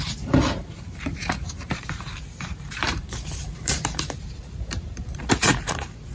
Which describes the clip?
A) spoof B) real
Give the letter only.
A